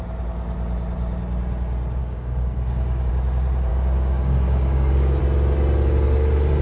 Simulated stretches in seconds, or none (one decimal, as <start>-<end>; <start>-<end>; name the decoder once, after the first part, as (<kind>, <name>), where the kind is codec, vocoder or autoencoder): 2.0-3.1 (codec, DAC); 3.7-5.2